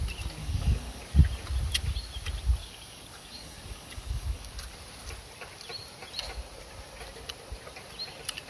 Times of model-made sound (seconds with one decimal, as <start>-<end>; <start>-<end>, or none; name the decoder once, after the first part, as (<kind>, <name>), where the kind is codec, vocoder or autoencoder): 0.4-1.0 (codec, DAC); 2.6-4.5